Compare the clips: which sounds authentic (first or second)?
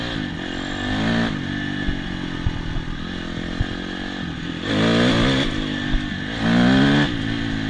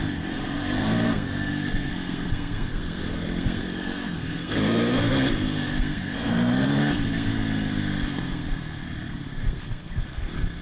first